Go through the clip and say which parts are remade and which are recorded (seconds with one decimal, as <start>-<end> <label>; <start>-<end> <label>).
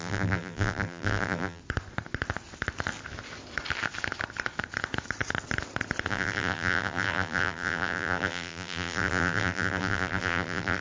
0.0-1.6 remade; 1.6-6.1 recorded; 6.1-10.8 remade